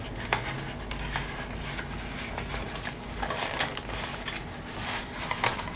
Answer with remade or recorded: recorded